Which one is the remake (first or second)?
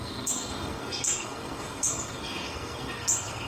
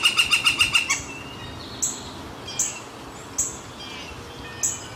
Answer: first